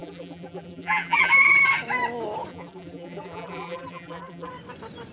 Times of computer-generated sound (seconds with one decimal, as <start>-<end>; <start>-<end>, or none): 0.0-1.3; 2.5-4.5